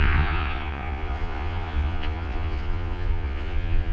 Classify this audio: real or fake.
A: fake